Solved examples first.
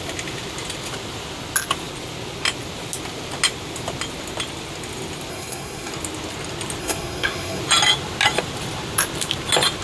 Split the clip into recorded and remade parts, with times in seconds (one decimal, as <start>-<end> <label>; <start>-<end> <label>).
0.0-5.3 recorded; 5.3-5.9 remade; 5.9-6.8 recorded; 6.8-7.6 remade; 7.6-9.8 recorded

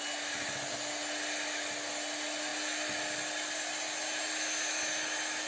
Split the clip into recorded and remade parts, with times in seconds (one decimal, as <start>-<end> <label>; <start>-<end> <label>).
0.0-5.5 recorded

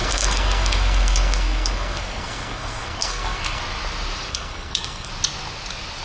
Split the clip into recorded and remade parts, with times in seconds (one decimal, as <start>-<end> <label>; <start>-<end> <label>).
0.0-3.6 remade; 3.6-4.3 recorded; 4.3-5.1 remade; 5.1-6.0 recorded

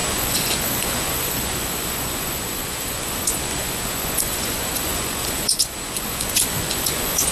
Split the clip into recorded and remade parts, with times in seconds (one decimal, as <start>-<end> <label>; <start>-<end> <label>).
0.0-7.3 remade

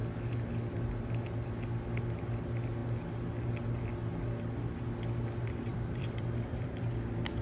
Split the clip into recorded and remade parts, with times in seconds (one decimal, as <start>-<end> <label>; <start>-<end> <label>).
0.0-5.7 recorded; 5.7-7.4 remade

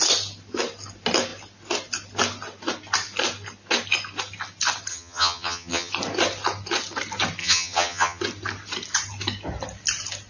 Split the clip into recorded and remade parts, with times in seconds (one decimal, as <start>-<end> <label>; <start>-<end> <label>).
0.0-4.9 recorded; 4.9-5.9 remade; 5.9-7.4 recorded; 7.4-8.2 remade; 8.2-10.3 recorded